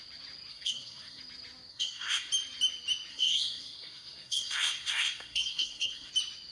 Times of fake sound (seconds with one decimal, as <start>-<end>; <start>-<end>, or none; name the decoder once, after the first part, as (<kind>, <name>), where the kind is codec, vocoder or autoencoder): 0.5-1.2 (codec, SNAC); 1.7-2.3; 3.1-6.1